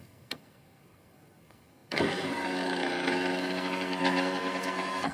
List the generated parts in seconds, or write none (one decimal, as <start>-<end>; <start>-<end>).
0.0-5.1